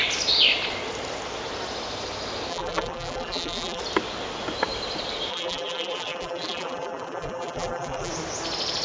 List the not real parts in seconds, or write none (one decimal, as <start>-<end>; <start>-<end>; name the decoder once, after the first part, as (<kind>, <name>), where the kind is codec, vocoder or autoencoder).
2.5-3.8 (vocoder, BigVGAN v2); 5.3-8.1